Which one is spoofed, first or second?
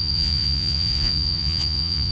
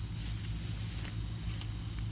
first